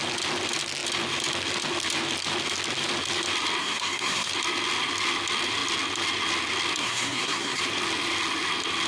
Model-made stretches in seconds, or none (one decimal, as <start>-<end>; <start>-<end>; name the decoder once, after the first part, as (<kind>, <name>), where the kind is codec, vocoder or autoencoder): 3.6-4.3 (codec, SNAC); 6.8-7.6